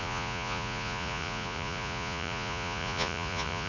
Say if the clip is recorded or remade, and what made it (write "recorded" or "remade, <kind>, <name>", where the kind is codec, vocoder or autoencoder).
remade, vocoder, Vocos